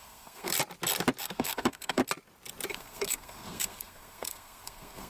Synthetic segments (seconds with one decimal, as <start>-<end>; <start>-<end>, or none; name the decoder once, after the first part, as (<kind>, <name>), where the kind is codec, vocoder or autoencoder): 0.0-0.5 (codec, SNAC); 1.2-2.0; 2.7-5.1

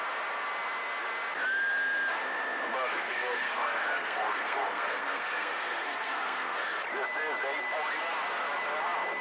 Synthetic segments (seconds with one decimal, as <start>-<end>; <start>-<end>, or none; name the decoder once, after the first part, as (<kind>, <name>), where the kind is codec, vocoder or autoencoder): 2.9-6.6 (codec, SNAC)

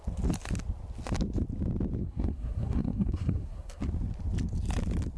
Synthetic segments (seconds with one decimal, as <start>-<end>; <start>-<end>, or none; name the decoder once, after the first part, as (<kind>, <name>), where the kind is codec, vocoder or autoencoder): 2.0-3.8 (codec, SNAC)

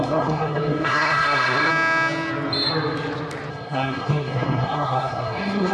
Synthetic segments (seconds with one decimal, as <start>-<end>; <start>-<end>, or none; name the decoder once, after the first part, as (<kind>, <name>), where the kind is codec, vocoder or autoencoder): 0.0-1.7 (codec, SNAC); 3.5-5.7

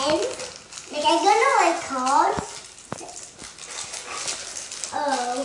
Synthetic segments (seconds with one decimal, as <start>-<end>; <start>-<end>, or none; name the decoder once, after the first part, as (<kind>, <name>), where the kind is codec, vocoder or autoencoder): none

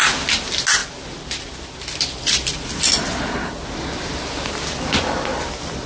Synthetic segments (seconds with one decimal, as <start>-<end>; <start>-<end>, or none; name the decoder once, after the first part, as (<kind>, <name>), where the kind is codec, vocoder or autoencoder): none

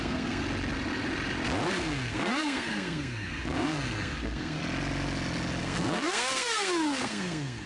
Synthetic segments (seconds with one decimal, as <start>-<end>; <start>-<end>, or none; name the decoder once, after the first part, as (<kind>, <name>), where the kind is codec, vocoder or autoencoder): 0.0-0.4 (codec, SNAC); 1.7-4.6; 5.6-7.7

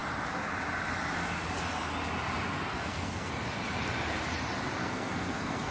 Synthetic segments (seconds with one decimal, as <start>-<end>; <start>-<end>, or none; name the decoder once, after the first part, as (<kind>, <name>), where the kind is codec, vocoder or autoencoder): 2.7-3.3 (codec, SNAC); 4.8-5.7